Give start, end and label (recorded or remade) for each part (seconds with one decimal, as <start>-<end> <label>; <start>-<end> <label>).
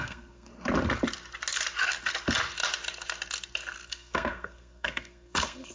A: 0.0-0.5 remade; 0.5-3.9 recorded; 3.9-5.7 remade